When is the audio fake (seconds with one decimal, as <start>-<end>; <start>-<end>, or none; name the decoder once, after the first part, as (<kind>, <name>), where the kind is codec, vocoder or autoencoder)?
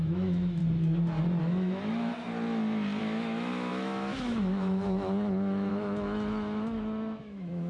0.0-0.6 (autoencoder, DAC-VAE); 1.4-2.1; 3.0-7.7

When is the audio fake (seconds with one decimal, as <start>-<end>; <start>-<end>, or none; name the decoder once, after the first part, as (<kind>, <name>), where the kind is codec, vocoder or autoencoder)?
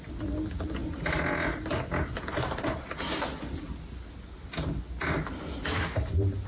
none